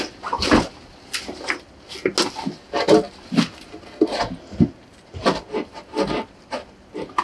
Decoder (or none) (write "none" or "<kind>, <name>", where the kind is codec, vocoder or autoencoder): none